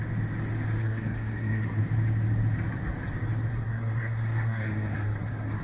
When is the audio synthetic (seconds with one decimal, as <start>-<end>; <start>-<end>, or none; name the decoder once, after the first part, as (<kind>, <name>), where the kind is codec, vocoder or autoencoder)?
0.8-1.8 (codec, SNAC); 3.5-5.6